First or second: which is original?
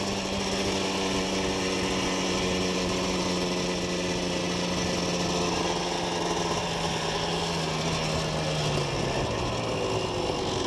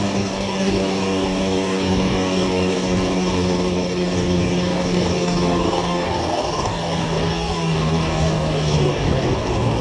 first